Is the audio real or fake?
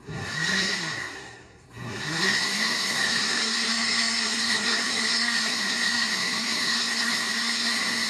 fake